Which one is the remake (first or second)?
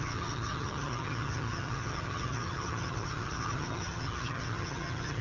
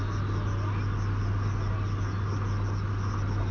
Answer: first